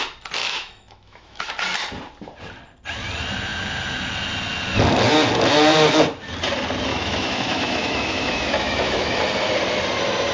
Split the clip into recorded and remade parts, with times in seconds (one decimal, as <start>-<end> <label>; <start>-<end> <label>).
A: 0.0-0.4 recorded; 0.4-1.5 remade; 1.5-6.9 recorded; 6.9-9.2 remade; 9.2-10.3 recorded